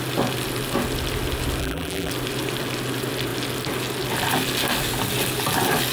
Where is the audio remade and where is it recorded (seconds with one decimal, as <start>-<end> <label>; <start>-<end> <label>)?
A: 0.0-1.6 recorded; 1.6-2.1 remade; 2.1-5.9 recorded

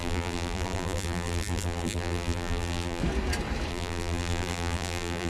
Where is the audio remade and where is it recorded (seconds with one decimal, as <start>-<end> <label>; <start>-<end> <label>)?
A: 0.0-3.0 remade; 3.0-3.7 recorded; 3.7-5.3 remade

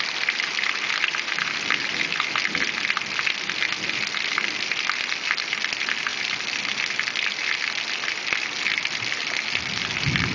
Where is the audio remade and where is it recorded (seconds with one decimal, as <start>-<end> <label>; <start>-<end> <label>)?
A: 0.0-10.3 recorded